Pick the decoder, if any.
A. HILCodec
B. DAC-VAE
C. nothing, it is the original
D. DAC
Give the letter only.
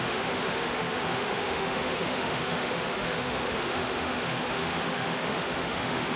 B